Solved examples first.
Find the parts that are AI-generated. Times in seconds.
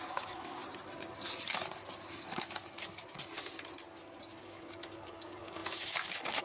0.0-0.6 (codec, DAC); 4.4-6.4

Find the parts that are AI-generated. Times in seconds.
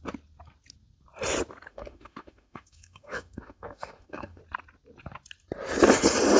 1.7-4.4 (autoencoder, DAC-VAE)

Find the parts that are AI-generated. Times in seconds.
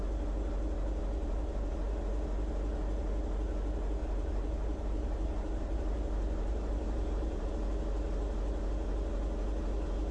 1.2-1.7 (vocoder, BigVGAN v2); 4.0-7.5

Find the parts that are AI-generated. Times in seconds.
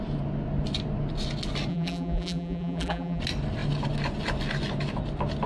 1.7-3.2 (vocoder, BigVGAN v2)